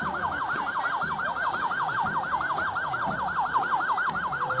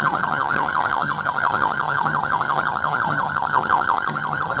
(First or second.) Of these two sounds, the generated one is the second